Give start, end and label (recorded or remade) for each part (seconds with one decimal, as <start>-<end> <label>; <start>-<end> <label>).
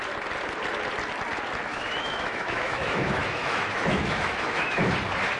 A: 0.0-1.7 recorded; 1.7-4.9 remade; 4.9-5.4 recorded